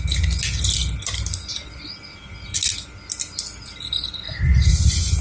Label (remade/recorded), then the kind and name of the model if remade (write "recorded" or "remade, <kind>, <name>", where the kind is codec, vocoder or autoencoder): recorded